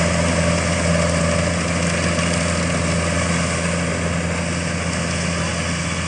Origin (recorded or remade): recorded